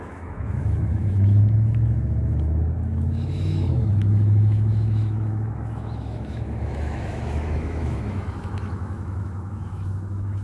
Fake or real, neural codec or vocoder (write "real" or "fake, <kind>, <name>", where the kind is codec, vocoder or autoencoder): fake, autoencoder, DAC-VAE